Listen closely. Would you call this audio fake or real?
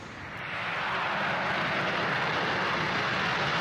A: real